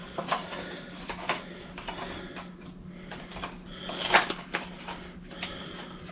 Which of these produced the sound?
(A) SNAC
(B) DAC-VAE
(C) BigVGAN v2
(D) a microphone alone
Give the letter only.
D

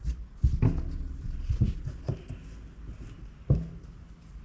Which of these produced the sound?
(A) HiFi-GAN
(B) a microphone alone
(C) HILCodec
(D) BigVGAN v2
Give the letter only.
B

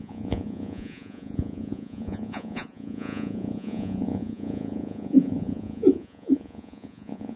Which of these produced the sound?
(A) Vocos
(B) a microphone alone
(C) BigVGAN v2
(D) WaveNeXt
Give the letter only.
A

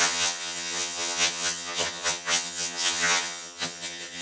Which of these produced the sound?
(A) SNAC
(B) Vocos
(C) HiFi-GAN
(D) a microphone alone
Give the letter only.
C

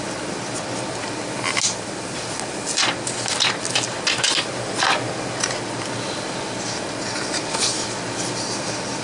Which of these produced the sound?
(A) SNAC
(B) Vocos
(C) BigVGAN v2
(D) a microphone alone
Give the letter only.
D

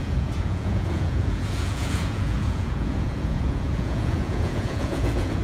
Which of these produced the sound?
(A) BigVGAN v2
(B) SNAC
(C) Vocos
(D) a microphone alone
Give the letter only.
C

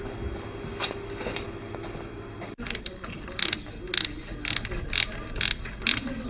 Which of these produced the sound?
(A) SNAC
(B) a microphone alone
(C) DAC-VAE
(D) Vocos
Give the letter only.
B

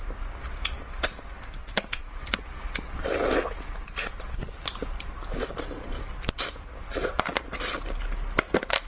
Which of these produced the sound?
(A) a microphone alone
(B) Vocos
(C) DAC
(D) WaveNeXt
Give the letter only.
A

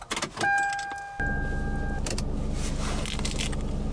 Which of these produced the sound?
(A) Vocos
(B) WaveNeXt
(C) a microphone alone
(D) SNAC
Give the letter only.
C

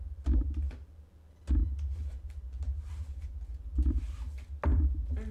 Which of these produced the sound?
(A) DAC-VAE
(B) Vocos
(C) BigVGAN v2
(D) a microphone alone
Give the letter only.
D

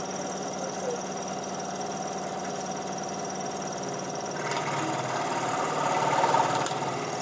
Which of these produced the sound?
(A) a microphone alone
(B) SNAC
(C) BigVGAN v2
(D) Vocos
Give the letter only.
A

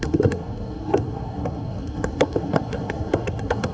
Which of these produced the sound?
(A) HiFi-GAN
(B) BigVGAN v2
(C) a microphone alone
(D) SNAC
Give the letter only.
D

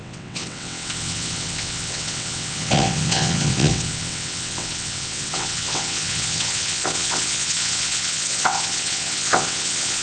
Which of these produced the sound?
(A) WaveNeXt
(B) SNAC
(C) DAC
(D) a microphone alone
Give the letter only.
A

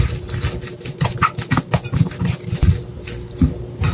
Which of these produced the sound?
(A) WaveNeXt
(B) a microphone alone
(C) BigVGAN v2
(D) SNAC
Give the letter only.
B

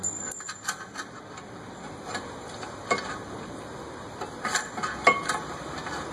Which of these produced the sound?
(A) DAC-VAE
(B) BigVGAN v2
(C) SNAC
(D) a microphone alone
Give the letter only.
B